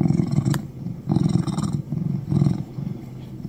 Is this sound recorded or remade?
recorded